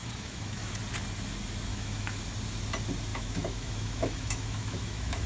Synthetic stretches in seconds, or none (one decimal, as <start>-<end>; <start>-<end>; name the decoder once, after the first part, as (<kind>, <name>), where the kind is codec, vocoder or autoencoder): 0.0-0.8 (autoencoder, DAC-VAE); 1.7-2.2; 3.1-5.3